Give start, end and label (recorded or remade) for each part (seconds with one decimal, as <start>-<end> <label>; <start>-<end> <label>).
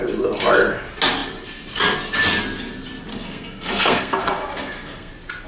0.0-3.1 recorded; 3.1-5.1 remade; 5.1-5.5 recorded